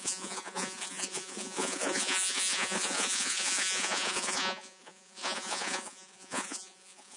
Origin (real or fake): fake